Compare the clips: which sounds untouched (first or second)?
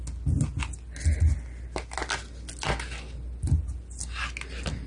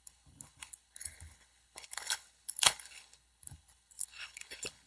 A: first